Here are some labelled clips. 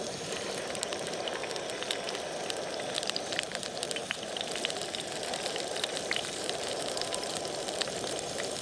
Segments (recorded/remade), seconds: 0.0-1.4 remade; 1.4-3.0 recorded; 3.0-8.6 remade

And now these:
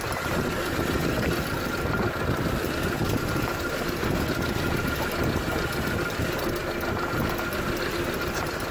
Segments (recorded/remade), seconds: 0.0-8.7 recorded

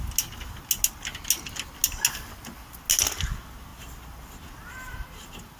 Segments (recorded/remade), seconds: 0.0-5.6 recorded

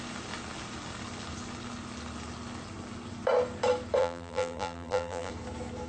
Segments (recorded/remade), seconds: 0.0-4.0 recorded; 4.0-5.3 remade; 5.3-5.9 recorded

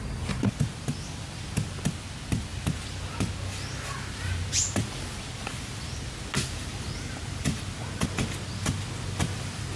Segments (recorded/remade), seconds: 0.0-9.8 recorded

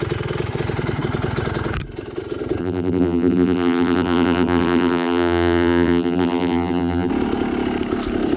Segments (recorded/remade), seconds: 0.0-2.6 recorded; 2.6-7.1 remade; 7.1-8.4 recorded